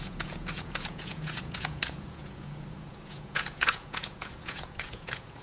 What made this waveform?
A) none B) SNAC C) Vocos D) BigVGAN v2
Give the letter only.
C